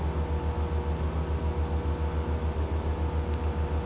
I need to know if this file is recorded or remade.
recorded